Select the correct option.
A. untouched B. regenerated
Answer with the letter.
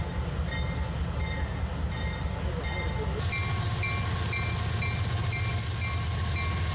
A